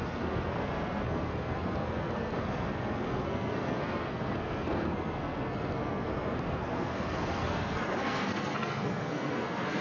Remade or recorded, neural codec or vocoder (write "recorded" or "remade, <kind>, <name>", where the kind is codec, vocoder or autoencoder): remade, codec, SNAC